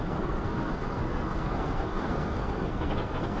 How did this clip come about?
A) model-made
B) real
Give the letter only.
A